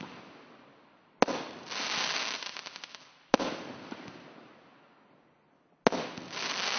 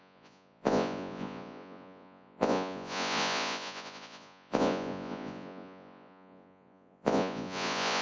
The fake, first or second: second